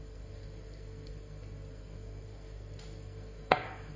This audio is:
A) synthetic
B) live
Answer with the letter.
A